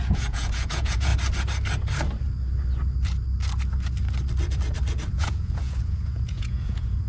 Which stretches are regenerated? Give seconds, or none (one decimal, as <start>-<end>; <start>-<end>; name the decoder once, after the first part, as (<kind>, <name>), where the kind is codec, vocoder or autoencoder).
0.0-1.1 (vocoder, Vocos); 5.1-7.1